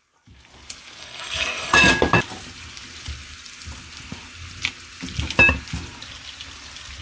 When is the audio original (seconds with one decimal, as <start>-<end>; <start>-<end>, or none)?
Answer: 0.0-1.0; 1.9-7.0